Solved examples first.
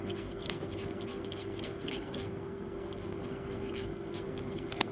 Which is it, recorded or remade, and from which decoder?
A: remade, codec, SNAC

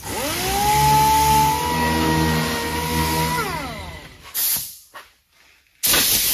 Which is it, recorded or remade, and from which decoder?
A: recorded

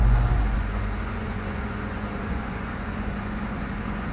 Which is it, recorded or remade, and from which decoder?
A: remade, vocoder, Vocos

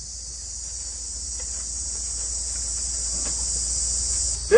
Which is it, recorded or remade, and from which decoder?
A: recorded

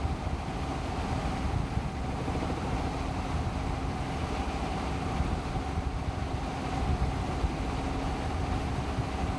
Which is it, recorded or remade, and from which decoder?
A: recorded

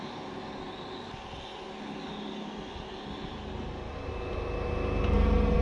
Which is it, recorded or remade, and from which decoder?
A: recorded